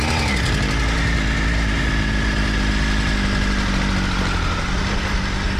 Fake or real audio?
real